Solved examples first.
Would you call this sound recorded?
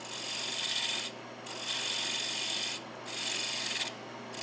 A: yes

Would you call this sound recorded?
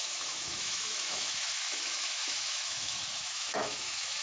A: no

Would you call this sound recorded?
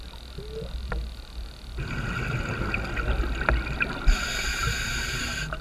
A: yes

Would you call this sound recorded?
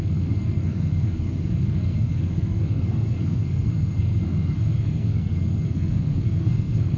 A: no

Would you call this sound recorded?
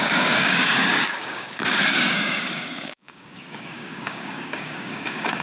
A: no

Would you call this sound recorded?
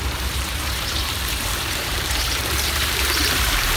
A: no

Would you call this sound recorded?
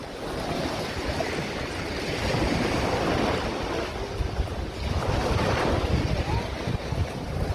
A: yes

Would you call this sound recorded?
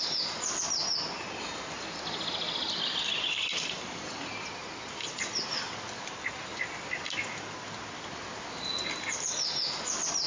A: yes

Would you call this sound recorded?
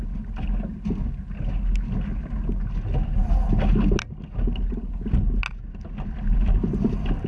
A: yes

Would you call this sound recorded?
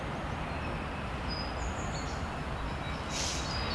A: yes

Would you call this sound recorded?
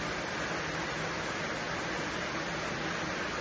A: yes